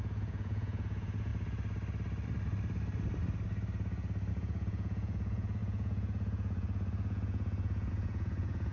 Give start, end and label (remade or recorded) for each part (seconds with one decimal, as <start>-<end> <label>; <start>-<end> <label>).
0.0-1.3 remade; 1.3-4.3 recorded; 4.3-8.7 remade